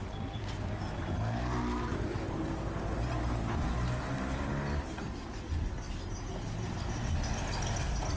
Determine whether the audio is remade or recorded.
recorded